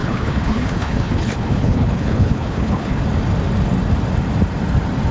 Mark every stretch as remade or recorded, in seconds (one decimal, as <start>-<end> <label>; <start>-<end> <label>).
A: 0.0-3.0 remade; 3.0-5.1 recorded